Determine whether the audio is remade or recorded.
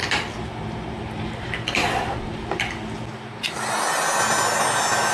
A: recorded